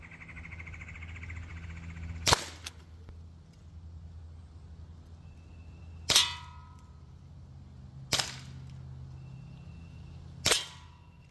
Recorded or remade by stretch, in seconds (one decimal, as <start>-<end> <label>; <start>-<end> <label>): 0.0-6.6 recorded; 6.6-7.3 remade; 7.3-11.3 recorded